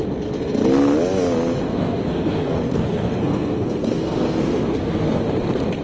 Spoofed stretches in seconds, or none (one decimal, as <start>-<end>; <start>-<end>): 1.7-5.2